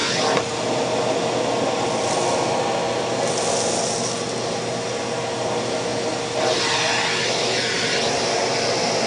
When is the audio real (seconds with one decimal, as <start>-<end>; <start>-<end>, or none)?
0.0-9.1